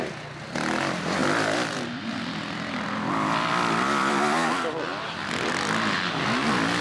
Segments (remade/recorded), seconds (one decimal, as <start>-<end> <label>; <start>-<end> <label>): 0.0-6.8 recorded

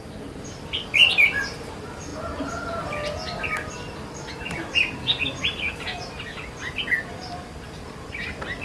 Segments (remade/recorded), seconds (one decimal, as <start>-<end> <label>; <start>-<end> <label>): 0.0-8.6 recorded

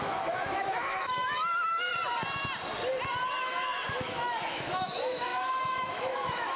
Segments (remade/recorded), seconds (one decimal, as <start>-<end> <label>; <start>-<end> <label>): 0.0-1.9 remade; 1.9-3.3 recorded; 3.3-6.6 remade

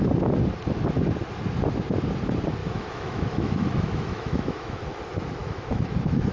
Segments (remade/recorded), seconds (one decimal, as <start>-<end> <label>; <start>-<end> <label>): 0.0-2.6 recorded; 2.6-4.8 remade; 4.8-5.4 recorded; 5.4-6.3 remade

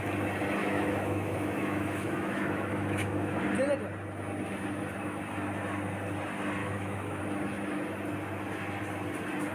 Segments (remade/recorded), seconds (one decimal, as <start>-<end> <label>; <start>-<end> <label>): 0.0-0.6 recorded; 0.6-3.4 remade; 3.4-6.6 recorded; 6.6-7.2 remade; 7.2-9.5 recorded